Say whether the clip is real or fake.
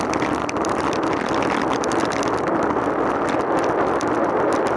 real